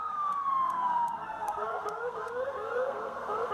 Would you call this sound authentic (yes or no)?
no